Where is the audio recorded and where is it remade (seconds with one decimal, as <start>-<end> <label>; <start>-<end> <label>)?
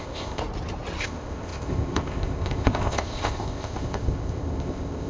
0.0-0.4 remade; 0.4-1.0 recorded; 1.0-5.1 remade